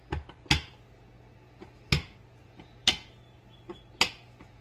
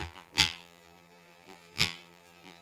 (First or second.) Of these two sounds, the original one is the first